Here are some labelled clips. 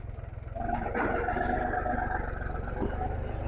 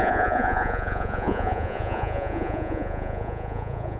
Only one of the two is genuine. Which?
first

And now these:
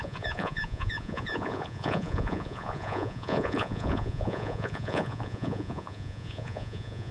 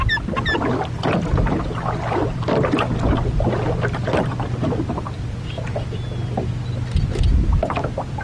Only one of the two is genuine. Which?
second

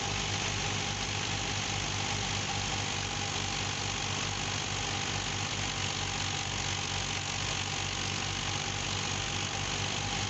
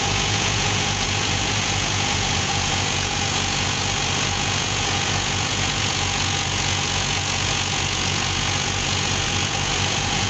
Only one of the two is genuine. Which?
first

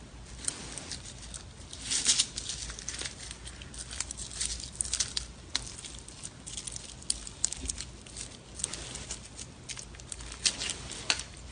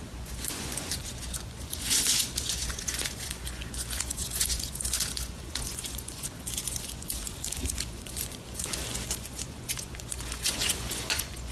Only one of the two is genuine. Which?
first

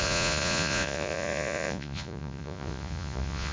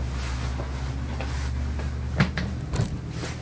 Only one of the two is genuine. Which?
second